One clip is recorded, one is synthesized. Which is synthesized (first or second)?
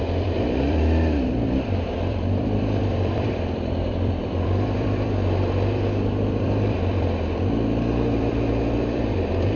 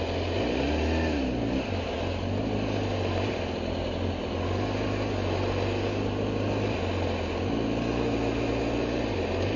first